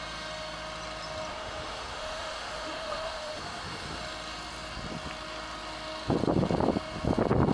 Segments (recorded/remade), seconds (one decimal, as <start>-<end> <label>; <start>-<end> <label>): 0.0-1.3 recorded; 1.3-4.0 remade; 4.0-7.5 recorded